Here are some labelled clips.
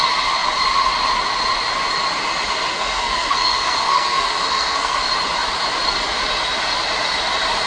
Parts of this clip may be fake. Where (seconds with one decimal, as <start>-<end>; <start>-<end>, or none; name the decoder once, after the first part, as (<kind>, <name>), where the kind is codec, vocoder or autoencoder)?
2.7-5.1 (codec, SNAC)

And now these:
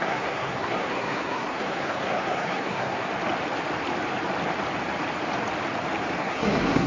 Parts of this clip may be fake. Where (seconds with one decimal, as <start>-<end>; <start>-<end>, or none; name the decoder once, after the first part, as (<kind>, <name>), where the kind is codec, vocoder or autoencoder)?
0.0-3.1 (codec, SNAC); 6.2-6.9

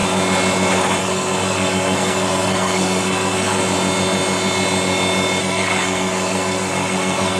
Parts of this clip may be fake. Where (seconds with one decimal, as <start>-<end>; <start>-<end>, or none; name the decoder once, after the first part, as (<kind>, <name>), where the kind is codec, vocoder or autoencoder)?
1.0-3.6 (codec, SNAC); 5.4-7.4

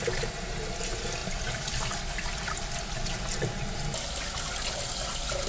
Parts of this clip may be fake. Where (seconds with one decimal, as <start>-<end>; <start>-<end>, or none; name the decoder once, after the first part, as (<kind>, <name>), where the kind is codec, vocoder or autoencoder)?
none

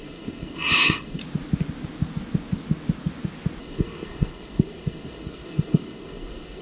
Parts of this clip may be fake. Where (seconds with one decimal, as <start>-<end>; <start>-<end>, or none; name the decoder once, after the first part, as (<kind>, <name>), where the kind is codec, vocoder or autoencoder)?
0.0-1.2 (codec, SNAC); 3.6-6.6

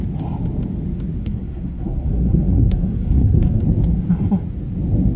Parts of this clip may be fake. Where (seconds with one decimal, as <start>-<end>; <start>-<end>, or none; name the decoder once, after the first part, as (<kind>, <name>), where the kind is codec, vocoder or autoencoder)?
1.2-3.6 (codec, SNAC)